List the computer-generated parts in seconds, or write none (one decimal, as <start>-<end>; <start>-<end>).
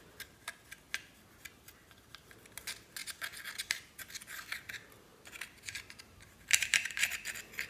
5.1-7.2